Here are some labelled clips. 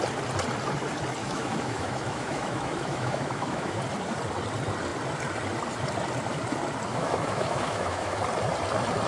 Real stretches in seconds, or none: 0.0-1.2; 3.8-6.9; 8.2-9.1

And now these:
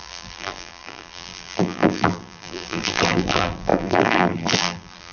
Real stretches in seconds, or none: none

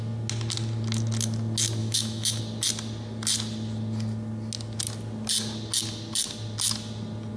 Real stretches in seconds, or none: 0.0-1.8; 2.4-7.4

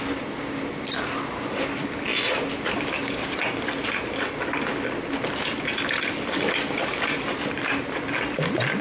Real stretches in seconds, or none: 0.0-8.8

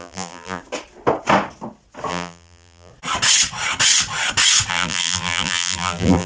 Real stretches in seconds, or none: 0.6-2.1; 2.9-4.7

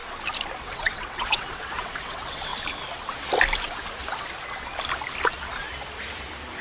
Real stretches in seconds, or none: 0.0-0.6; 2.5-6.6

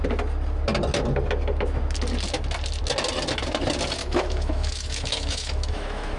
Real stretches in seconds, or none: 0.0-4.0